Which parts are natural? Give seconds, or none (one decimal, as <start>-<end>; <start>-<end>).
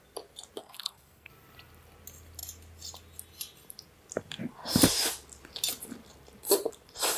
0.0-0.6; 1.3-7.2